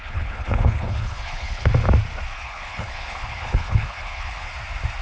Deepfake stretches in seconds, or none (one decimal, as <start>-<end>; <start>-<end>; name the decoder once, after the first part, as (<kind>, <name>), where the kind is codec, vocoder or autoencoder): 0.0-1.7 (codec, HILCodec); 2.3-4.5